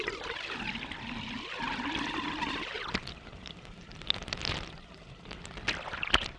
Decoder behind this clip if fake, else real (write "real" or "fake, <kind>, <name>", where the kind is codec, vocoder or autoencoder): real